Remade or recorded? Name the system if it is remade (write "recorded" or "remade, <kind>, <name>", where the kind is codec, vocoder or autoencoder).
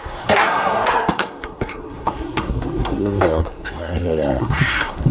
remade, codec, SNAC